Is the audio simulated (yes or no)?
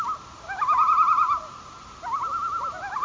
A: no